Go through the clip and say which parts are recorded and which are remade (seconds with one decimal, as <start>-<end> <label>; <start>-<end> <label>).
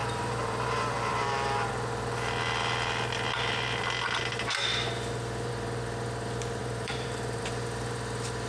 0.0-1.7 remade; 1.7-6.6 recorded; 6.6-7.4 remade; 7.4-8.5 recorded